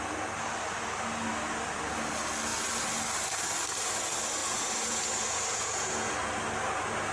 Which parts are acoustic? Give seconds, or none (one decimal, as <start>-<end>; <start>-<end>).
0.0-4.4; 6.1-7.1